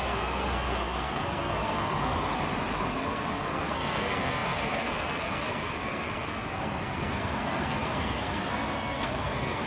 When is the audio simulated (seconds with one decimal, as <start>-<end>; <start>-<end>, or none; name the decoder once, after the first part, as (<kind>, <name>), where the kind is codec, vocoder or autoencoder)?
0.0-2.1 (codec, SNAC); 2.8-9.7

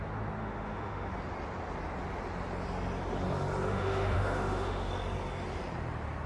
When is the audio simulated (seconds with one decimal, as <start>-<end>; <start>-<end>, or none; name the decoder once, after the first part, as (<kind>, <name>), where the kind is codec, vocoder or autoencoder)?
0.4-1.1 (autoencoder, DAC-VAE); 3.7-4.9

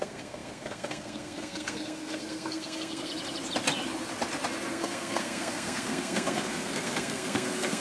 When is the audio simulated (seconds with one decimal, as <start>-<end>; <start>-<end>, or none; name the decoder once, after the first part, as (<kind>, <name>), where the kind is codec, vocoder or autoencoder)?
0.0-3.1 (codec, SNAC); 4.7-7.8